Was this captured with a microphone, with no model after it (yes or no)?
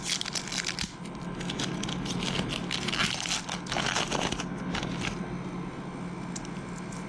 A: yes